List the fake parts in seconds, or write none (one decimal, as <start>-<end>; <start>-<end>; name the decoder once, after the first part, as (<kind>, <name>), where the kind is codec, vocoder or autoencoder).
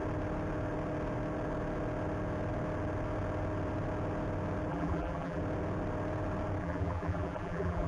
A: 4.7-5.4 (vocoder, BigVGAN v2); 6.6-7.9